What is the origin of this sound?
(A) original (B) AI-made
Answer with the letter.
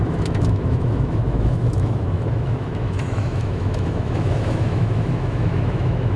B